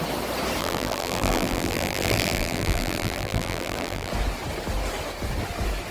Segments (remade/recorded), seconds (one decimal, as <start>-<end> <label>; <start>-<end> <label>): 0.0-0.6 recorded; 0.6-4.1 remade; 4.1-5.9 recorded